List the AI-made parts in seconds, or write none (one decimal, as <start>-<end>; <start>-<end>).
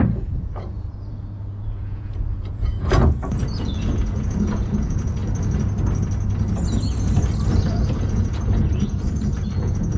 0.0-5.2; 7.7-10.0